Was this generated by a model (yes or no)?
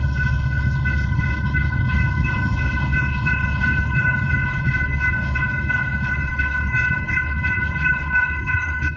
yes